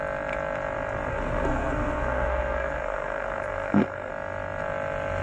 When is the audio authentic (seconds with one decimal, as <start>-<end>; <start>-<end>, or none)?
0.0-1.1; 4.1-5.2

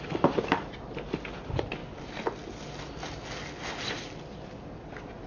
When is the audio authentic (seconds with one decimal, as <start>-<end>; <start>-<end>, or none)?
0.0-5.3

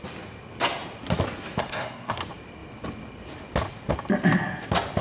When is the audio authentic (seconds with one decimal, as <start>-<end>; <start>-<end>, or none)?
0.0-1.6; 2.2-5.0

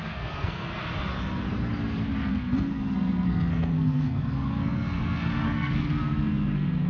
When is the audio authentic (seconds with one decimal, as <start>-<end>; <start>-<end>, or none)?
0.8-2.3

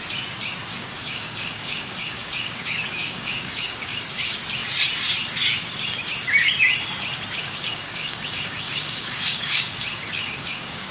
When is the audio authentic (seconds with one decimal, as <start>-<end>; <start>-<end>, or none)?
0.0-0.7; 4.0-7.4

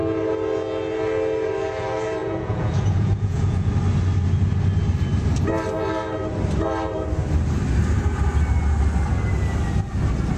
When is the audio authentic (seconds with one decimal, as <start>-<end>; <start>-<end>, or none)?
0.0-2.2; 3.7-10.4

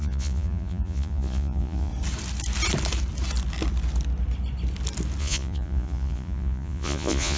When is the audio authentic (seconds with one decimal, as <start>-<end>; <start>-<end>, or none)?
1.9-5.2